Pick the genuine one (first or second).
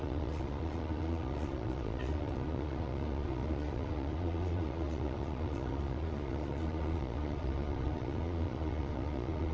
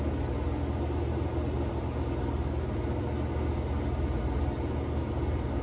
second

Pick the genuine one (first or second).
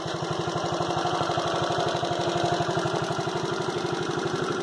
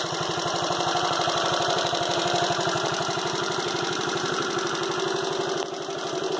first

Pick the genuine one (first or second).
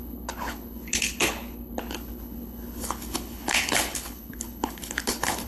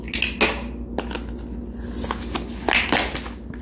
second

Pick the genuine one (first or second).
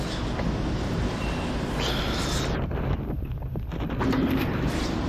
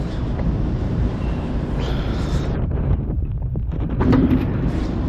first